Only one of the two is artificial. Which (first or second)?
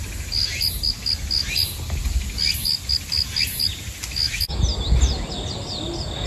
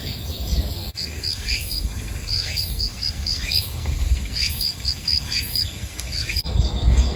second